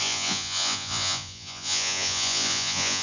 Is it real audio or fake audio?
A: fake